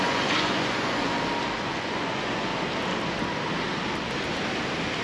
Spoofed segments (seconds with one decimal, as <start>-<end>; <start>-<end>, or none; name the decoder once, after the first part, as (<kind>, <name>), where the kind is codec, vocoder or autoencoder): 0.0-1.1 (vocoder, Vocos); 1.6-2.5